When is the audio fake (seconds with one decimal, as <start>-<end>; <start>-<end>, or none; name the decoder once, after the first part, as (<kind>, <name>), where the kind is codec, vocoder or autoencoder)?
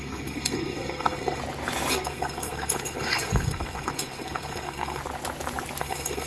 0.0-1.4 (codec, SNAC); 1.9-5.0; 5.8-6.3